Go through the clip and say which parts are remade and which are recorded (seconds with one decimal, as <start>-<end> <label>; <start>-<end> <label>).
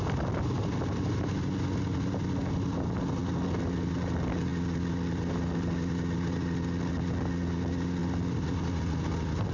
0.0-9.5 recorded